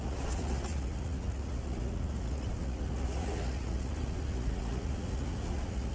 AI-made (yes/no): yes